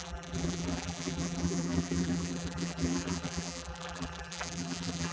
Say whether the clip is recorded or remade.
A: remade